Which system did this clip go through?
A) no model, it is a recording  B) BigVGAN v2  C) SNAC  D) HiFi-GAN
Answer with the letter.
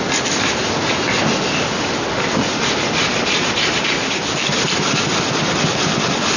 A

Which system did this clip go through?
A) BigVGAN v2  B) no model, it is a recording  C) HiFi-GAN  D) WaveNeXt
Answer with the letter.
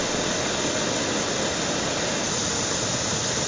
B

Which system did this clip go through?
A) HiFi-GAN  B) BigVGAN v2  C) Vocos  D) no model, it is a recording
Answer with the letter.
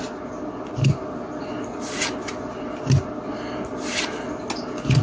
D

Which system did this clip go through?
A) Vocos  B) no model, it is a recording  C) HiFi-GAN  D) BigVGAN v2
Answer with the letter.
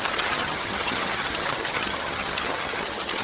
C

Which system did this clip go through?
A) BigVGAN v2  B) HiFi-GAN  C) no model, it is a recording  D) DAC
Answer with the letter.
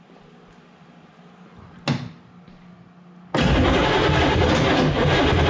C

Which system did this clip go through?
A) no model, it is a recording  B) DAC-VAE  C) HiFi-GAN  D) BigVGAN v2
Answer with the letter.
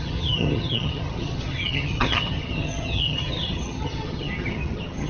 C